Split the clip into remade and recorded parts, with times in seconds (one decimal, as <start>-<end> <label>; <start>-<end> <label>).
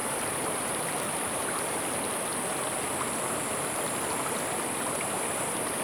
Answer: 0.0-2.3 remade; 2.3-5.8 recorded